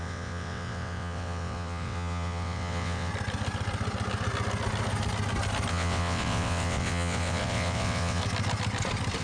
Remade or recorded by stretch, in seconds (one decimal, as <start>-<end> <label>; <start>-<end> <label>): 0.0-3.1 remade; 3.1-5.7 recorded; 5.7-8.2 remade; 8.2-9.2 recorded